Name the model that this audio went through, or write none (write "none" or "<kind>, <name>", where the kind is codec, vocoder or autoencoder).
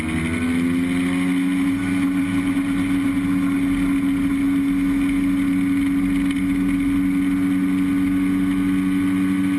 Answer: none